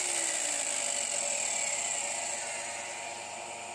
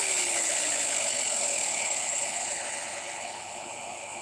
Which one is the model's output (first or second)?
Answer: second